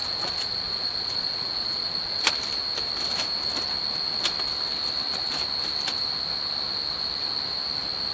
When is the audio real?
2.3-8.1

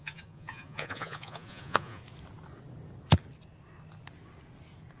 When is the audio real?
2.0-5.0